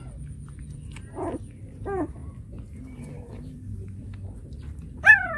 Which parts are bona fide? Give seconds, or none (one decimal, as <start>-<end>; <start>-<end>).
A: 0.0-5.4